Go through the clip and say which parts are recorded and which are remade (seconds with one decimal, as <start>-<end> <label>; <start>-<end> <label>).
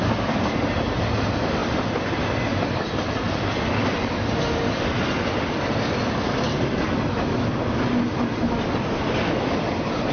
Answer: 0.0-10.1 recorded